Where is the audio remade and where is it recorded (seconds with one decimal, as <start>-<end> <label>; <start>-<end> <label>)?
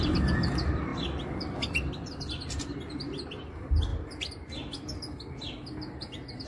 0.0-6.5 recorded